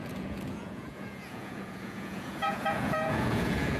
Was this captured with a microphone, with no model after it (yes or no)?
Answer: no